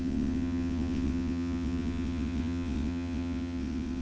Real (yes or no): no